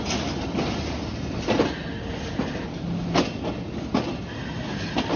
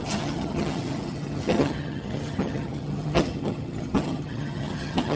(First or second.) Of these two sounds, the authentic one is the first